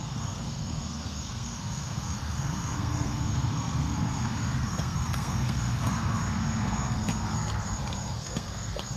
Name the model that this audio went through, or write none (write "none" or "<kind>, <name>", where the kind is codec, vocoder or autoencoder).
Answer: codec, SNAC